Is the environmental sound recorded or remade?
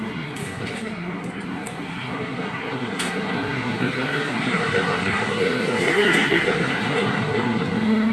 remade